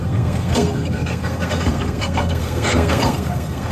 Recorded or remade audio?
remade